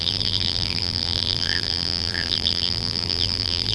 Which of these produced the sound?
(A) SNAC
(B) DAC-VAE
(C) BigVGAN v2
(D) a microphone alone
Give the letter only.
C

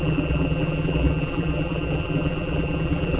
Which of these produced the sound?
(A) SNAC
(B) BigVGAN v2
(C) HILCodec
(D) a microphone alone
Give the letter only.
B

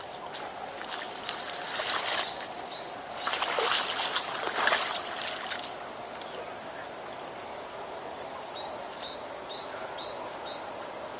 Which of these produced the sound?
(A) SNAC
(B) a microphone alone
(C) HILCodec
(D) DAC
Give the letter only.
B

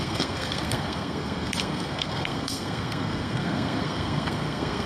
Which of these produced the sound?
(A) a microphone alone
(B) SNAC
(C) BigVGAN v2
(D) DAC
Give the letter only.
B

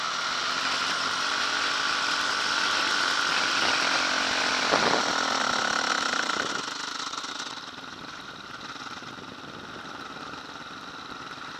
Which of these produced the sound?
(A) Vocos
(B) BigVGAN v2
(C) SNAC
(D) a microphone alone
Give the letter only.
D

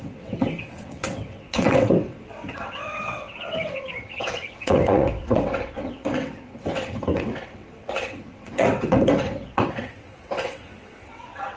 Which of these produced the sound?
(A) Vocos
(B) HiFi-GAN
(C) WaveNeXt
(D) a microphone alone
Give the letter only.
C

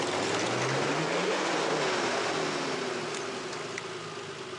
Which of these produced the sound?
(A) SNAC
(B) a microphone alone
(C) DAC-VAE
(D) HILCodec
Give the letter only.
B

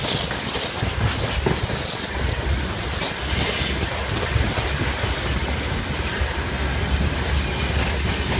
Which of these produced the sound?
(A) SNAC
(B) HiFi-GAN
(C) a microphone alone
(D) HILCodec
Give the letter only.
C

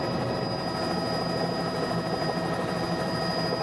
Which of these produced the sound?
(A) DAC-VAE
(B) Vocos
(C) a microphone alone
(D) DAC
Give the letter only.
C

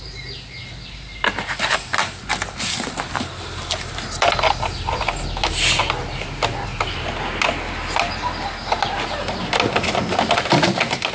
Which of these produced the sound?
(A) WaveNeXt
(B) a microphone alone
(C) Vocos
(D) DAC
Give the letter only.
B